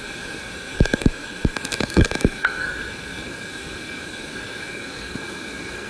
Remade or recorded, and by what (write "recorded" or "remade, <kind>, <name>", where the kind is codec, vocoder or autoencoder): remade, codec, SNAC